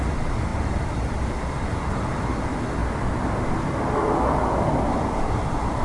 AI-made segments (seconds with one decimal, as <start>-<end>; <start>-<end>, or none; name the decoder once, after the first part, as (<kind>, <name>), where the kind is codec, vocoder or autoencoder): 0.0-2.8 (vocoder, BigVGAN v2); 4.9-5.8